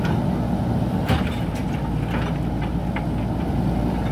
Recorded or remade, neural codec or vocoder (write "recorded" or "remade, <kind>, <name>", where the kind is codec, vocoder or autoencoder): recorded